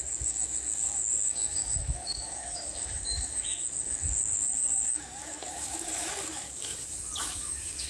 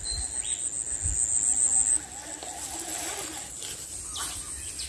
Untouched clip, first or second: second